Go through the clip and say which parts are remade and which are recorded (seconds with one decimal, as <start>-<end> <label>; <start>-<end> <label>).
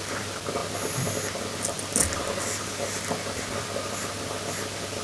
0.0-5.0 recorded